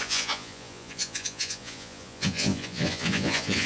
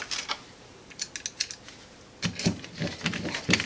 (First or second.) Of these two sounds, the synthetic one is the first